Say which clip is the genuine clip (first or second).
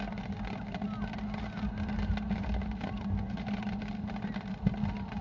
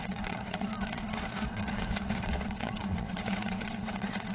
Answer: first